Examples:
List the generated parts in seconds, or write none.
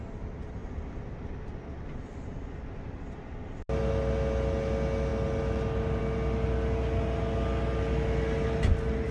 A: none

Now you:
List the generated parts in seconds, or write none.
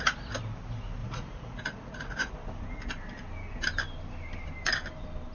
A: 1.0-2.3 (vocoder, Vocos)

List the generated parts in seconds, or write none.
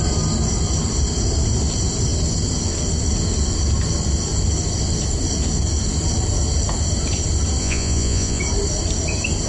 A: 7.6-8.4 (vocoder, Vocos)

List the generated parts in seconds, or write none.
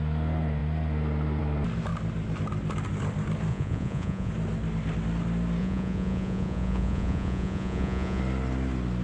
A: 3.5-4.3 (vocoder, Vocos); 5.6-8.2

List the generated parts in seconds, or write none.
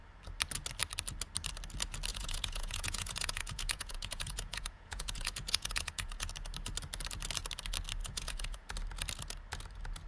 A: 2.1-6.3 (vocoder, Vocos); 8.0-8.7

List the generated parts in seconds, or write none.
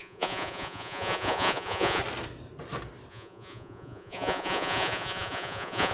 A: 0.0-2.0 (vocoder, Vocos); 3.1-5.9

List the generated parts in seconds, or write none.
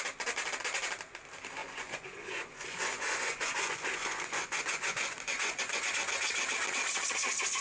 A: 1.6-5.9 (vocoder, Vocos)